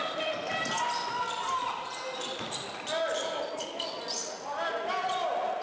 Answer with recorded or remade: recorded